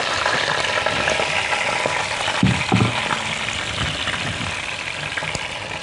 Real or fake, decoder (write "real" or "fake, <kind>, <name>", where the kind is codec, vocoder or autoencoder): real